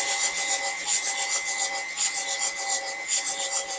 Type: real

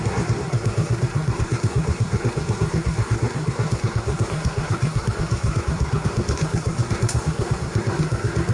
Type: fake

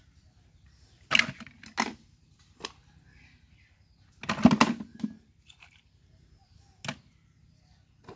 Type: real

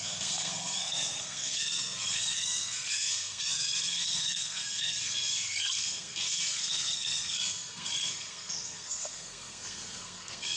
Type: fake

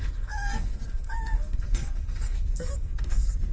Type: fake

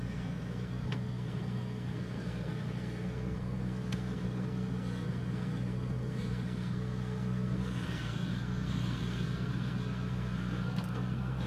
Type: fake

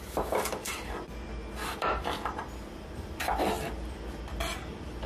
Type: real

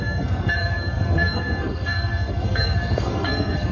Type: fake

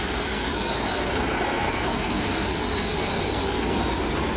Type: fake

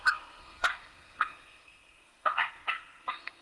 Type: fake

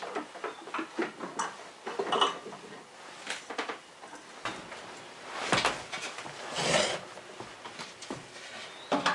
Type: real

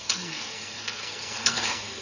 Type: fake